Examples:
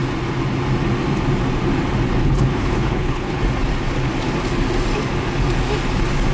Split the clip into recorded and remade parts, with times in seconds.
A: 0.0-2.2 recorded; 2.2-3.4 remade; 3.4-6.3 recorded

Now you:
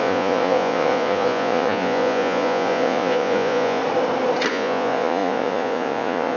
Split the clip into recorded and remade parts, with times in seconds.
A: 0.0-3.8 remade; 3.8-4.5 recorded; 4.5-6.4 remade

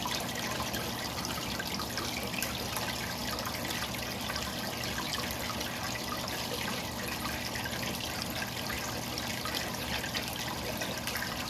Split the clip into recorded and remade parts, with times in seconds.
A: 0.0-9.3 recorded; 9.3-10.1 remade; 10.1-11.5 recorded

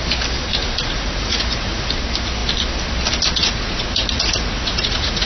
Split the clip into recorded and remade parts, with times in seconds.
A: 0.0-0.6 recorded; 0.6-1.9 remade; 1.9-3.4 recorded; 3.4-5.3 remade

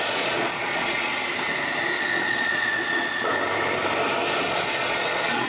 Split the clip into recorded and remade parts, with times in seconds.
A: 0.0-1.1 remade; 1.1-2.0 recorded; 2.0-3.3 remade; 3.3-4.4 recorded; 4.4-5.5 remade